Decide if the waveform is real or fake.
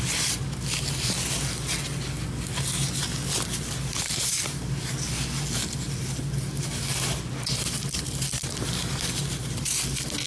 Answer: real